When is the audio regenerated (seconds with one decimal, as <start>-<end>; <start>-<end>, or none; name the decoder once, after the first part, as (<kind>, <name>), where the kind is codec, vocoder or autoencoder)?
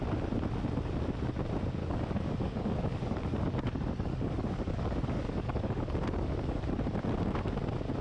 1.8-6.6 (codec, DAC)